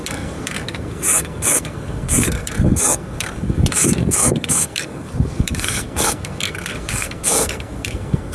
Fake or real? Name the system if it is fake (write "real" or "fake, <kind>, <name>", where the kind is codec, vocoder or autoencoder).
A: fake, codec, SNAC